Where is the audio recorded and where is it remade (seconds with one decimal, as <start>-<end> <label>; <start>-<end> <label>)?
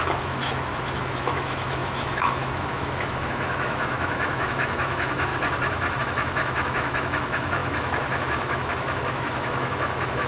0.0-5.3 remade; 5.3-6.0 recorded; 6.0-10.3 remade